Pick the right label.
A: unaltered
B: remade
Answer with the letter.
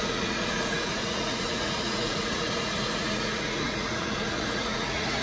B